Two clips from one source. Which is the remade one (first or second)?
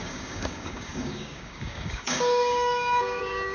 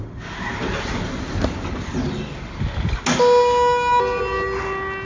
first